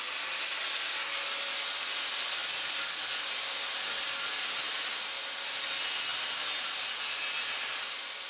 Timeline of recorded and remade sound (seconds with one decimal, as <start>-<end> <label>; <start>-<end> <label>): 0.0-8.3 recorded